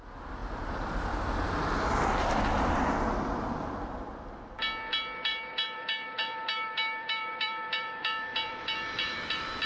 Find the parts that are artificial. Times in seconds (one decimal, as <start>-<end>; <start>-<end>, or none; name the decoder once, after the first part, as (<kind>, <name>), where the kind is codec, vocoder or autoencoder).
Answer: 0.4-1.5 (vocoder, BigVGAN v2); 5.3-9.7